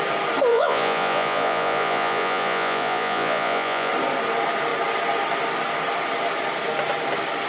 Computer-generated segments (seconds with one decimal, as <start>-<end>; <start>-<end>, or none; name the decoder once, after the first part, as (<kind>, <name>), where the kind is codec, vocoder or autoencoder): 0.5-3.9 (vocoder, Vocos)

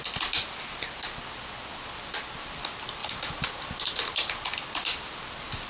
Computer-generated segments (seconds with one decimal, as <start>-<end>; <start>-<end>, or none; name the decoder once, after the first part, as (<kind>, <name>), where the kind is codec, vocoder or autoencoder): none

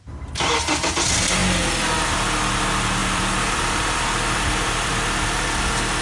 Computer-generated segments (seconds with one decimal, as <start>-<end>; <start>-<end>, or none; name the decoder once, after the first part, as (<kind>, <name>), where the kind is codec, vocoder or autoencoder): 3.0-4.9 (vocoder, BigVGAN v2)